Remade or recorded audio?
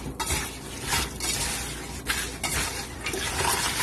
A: recorded